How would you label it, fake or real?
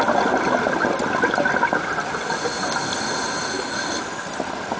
real